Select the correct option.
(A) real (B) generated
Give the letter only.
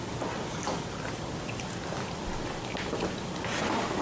A